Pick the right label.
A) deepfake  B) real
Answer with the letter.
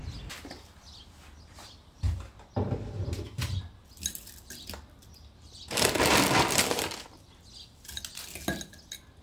B